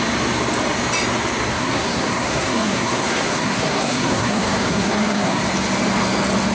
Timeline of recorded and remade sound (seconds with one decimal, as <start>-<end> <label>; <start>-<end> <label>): 0.0-1.5 recorded; 1.5-5.4 remade; 5.4-6.5 recorded